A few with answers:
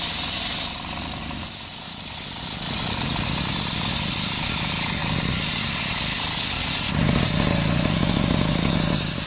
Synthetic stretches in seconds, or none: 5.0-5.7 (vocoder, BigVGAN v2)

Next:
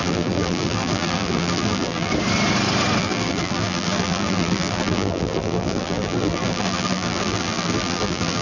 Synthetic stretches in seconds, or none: 0.0-2.1 (vocoder, BigVGAN v2); 3.0-8.4

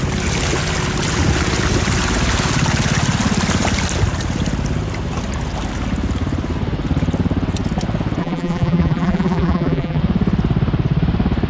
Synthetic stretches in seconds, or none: 8.2-10.0 (vocoder, BigVGAN v2)